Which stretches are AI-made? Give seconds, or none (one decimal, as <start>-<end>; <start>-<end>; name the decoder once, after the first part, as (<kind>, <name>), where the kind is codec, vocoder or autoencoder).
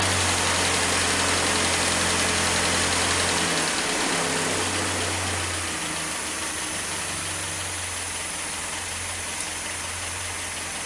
8.6-10.4 (vocoder, BigVGAN v2)